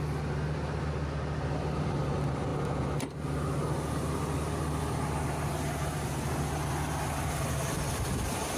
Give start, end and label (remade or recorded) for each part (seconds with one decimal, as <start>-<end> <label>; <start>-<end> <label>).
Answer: 0.0-8.6 recorded